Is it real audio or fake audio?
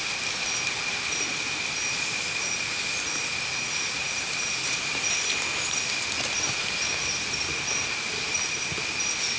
real